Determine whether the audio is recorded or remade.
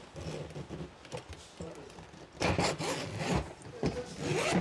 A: recorded